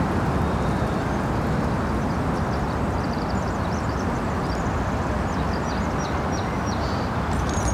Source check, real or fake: real